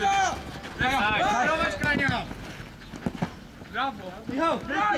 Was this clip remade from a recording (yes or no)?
no